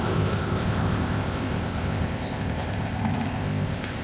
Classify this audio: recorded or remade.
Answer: remade